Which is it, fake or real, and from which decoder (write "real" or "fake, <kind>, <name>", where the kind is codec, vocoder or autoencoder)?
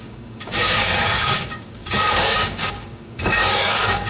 fake, codec, DAC